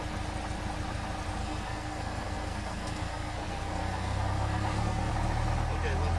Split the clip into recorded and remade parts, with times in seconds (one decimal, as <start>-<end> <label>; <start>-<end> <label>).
0.0-1.4 recorded; 1.4-5.1 remade; 5.1-6.2 recorded